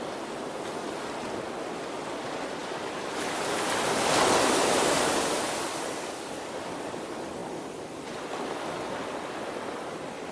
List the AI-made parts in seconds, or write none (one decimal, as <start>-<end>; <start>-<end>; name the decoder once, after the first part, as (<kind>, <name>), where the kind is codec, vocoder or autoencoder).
2.6-5.6 (vocoder, BigVGAN v2)